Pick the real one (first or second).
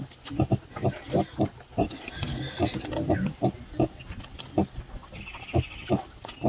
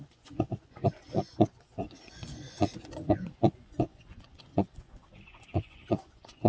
first